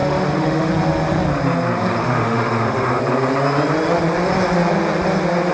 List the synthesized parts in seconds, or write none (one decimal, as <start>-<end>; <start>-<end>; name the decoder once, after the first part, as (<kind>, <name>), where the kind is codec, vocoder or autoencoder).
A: 0.0-0.7 (autoencoder, DAC-VAE); 2.0-3.0